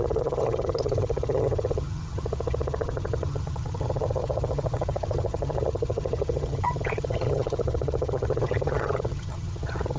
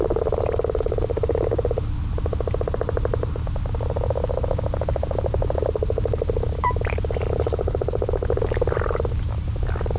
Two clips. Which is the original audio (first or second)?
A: second